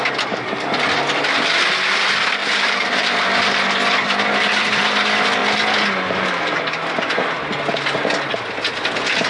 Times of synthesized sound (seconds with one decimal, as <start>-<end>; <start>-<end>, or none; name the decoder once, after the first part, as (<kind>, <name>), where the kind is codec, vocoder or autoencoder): 2.4-3.4 (vocoder, BigVGAN v2)